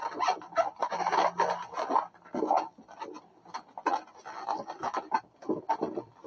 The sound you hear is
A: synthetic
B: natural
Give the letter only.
B